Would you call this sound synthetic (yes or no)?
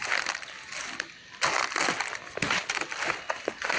no